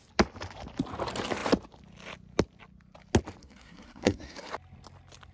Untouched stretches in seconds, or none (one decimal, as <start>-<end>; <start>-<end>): 0.0-3.4; 4.5-5.3